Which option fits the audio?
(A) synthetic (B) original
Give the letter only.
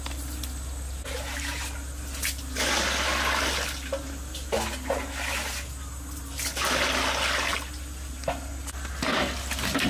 B